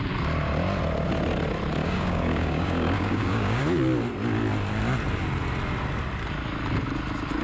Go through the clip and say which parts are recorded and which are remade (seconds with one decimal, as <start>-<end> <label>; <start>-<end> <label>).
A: 0.0-1.8 recorded; 1.8-3.6 remade; 3.6-7.4 recorded